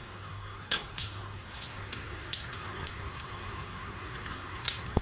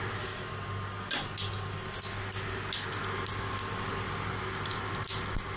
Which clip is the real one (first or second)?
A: second